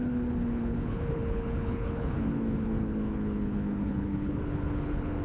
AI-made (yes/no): yes